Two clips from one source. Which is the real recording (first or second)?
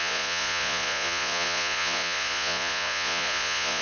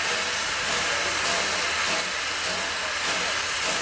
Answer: second